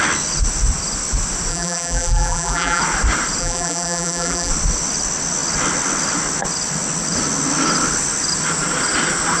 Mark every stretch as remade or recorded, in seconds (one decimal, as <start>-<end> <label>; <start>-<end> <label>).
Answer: 0.0-1.5 recorded; 1.5-2.8 remade; 2.8-3.4 recorded; 3.4-4.5 remade; 4.5-9.4 recorded